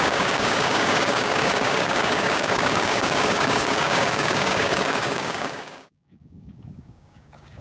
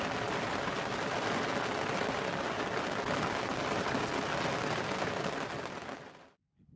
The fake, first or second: first